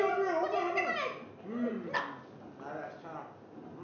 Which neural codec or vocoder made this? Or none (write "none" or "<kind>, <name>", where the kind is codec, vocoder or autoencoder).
none